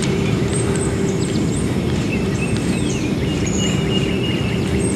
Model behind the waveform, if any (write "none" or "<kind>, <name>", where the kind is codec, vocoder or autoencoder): vocoder, BigVGAN v2